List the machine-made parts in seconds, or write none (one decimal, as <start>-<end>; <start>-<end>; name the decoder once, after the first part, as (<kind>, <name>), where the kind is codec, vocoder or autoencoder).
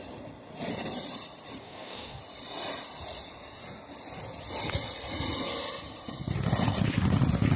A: 1.6-2.2 (codec, DAC)